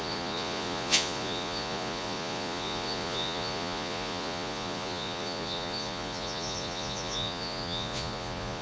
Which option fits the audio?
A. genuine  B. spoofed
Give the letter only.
B